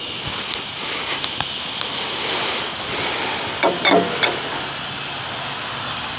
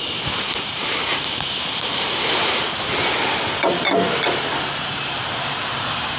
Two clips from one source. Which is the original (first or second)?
first